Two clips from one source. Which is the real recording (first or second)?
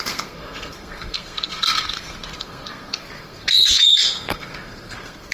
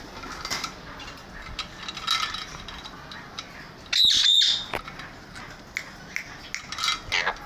second